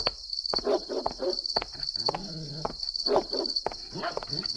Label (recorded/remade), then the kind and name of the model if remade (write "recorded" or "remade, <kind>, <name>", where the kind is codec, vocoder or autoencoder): recorded